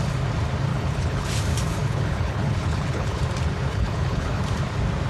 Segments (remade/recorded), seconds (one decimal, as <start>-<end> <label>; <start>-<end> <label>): 0.0-0.7 recorded; 0.7-1.4 remade; 1.4-1.8 recorded; 1.8-3.2 remade; 3.2-3.7 recorded; 3.7-4.4 remade; 4.4-5.1 recorded